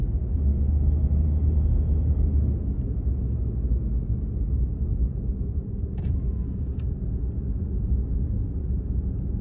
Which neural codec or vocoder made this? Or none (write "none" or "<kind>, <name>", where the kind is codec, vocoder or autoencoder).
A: none